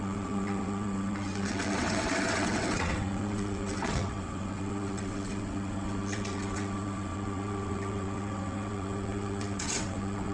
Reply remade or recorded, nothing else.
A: remade